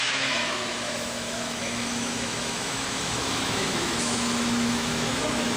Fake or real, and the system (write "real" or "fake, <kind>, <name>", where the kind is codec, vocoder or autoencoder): fake, autoencoder, DAC-VAE